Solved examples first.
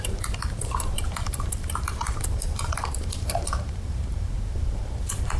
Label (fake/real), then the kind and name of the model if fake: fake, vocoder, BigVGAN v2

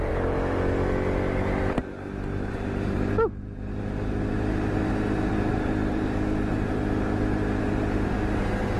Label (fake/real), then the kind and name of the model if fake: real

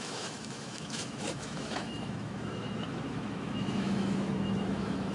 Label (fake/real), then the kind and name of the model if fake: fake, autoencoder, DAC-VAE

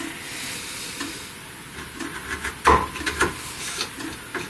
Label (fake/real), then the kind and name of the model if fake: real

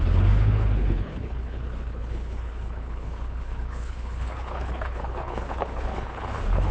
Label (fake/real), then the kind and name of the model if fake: fake, codec, HILCodec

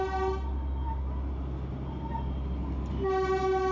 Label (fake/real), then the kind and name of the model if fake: real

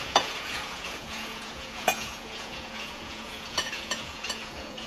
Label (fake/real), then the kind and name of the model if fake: fake, vocoder, Vocos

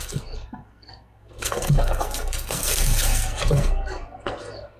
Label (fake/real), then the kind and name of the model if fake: fake, codec, SNAC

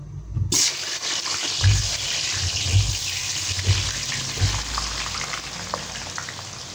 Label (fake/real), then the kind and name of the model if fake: real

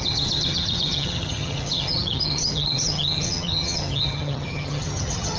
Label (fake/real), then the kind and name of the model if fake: fake, vocoder, HiFi-GAN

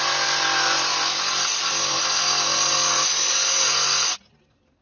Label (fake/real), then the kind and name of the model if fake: real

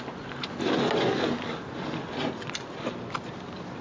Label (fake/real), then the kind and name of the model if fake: real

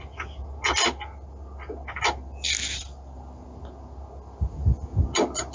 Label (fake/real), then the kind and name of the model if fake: real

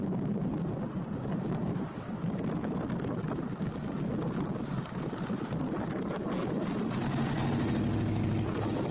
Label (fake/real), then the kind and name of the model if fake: real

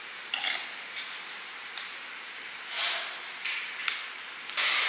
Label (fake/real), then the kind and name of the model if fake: real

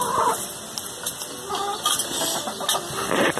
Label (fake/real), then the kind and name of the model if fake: real